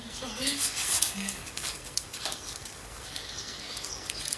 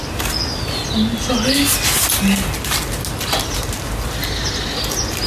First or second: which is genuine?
second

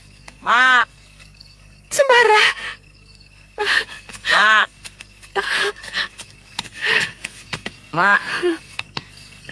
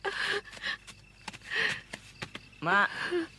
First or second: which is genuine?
second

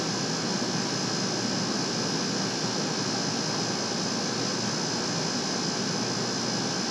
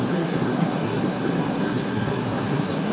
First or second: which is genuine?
first